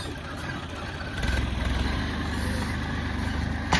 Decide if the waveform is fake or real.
real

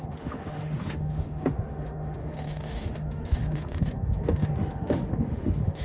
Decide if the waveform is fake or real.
fake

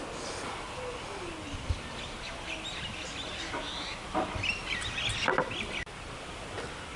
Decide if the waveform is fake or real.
real